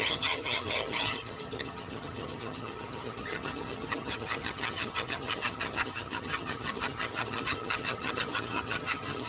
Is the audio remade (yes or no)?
yes